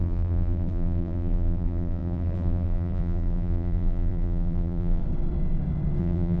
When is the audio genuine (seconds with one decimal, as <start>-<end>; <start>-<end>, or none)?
5.0-6.0